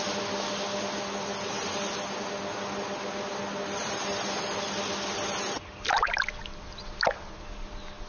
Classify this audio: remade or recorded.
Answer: recorded